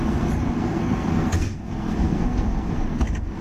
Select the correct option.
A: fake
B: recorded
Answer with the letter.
A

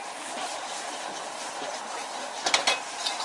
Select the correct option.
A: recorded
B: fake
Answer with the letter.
A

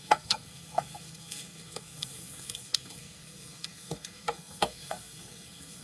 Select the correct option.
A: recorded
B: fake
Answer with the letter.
B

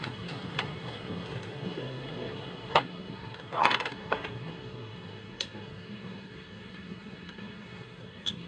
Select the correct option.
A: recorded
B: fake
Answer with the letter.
B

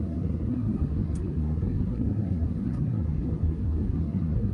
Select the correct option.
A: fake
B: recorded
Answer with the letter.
A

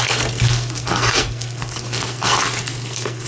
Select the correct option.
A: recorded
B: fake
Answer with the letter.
B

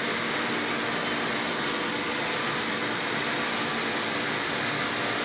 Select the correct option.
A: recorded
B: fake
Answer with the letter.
A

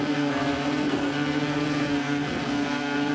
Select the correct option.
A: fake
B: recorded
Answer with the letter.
A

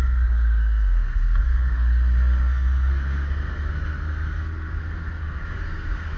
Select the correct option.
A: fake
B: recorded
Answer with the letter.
A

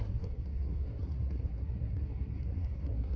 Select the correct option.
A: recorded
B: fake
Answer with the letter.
B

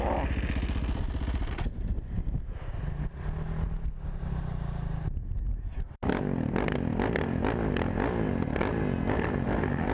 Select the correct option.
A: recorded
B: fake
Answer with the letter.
A